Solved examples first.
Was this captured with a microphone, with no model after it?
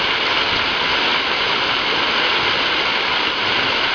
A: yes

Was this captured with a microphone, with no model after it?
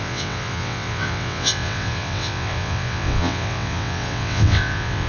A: no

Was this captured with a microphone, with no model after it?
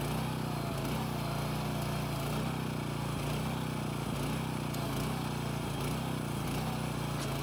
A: yes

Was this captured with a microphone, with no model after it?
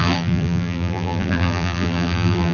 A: no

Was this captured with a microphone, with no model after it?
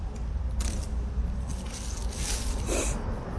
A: yes